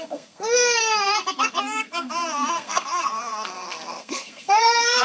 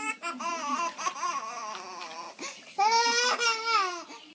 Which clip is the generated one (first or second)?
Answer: first